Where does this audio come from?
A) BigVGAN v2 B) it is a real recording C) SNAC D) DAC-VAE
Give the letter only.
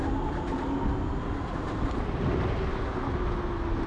B